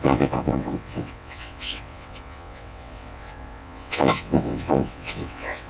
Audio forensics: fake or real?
fake